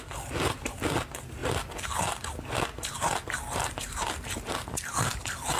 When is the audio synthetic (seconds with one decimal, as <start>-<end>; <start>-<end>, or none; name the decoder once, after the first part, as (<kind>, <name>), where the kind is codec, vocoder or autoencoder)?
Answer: none